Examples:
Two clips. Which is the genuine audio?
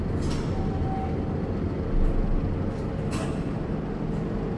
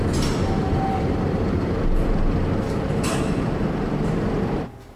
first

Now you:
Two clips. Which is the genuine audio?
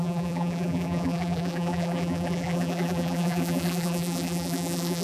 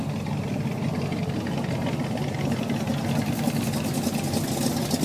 second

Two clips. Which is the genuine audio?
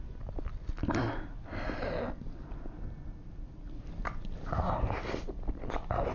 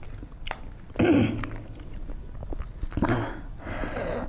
second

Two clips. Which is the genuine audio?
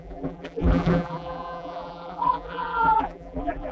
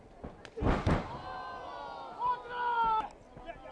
second